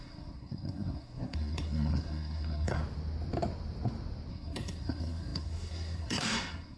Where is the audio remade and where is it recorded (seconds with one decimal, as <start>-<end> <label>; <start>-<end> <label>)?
0.0-2.8 remade; 2.8-4.3 recorded; 4.3-6.8 remade